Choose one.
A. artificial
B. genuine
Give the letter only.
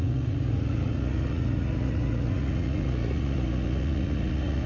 A